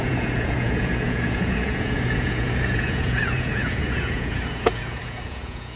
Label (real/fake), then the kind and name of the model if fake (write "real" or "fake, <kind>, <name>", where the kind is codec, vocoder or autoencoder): fake, vocoder, Vocos